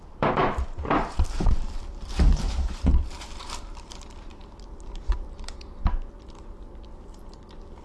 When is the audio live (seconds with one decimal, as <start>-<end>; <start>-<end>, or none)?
4.4-7.8